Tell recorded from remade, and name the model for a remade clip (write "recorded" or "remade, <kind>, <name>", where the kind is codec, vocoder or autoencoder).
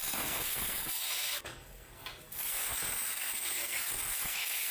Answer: remade, codec, SNAC